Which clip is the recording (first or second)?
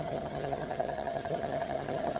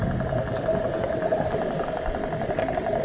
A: second